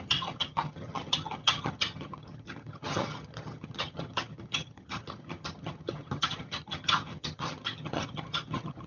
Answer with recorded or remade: remade